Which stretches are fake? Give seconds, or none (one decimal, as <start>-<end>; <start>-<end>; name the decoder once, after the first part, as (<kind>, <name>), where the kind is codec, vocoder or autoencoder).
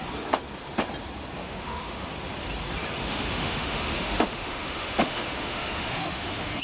1.4-2.1 (autoencoder, DAC-VAE); 3.0-6.6